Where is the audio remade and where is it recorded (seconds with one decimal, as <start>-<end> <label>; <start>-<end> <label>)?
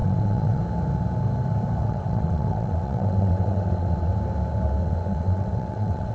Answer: 0.0-0.6 remade; 0.6-1.8 recorded; 1.8-4.1 remade; 4.1-4.8 recorded; 4.8-6.1 remade